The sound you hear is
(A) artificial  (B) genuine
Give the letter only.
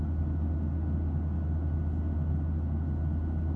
B